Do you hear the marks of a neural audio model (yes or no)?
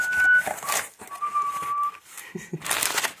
no